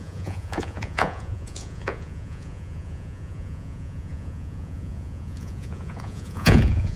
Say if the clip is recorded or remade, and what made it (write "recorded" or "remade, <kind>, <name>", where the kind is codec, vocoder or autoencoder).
remade, vocoder, Vocos